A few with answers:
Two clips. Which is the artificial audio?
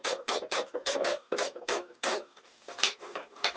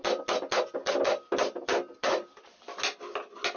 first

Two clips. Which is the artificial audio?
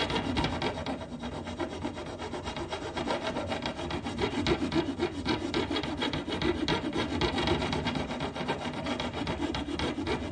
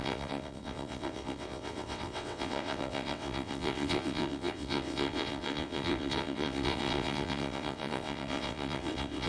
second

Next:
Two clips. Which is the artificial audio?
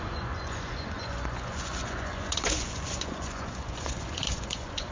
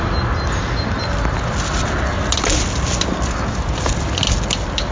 first